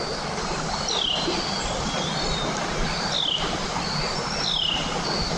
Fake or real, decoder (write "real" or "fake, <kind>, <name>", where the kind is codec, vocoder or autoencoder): real